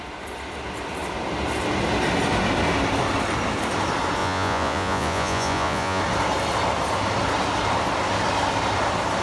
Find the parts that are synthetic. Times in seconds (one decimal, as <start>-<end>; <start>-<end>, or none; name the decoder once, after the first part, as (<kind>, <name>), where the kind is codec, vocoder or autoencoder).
4.2-6.0 (vocoder, Vocos)